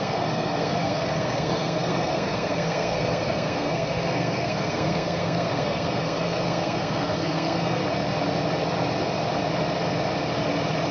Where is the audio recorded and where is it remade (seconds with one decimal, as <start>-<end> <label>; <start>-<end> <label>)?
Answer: 0.0-7.8 remade; 7.8-10.9 recorded